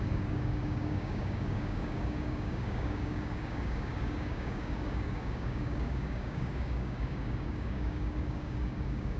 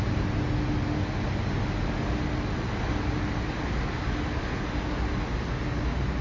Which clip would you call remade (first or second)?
first